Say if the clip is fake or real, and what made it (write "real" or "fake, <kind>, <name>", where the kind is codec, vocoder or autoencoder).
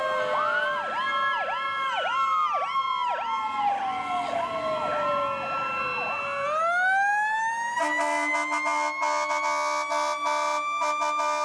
real